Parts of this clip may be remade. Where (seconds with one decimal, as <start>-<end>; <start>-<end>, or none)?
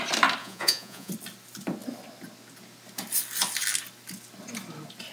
0.4-1.1